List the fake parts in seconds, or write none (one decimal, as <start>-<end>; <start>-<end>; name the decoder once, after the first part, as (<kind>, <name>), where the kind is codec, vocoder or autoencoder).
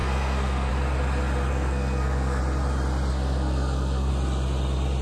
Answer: 0.0-0.7 (codec, SNAC); 1.5-2.4; 3.1-4.1